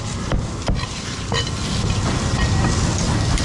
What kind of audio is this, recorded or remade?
remade